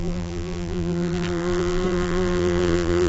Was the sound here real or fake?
fake